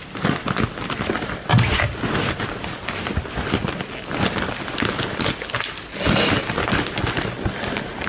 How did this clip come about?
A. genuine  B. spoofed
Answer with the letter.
A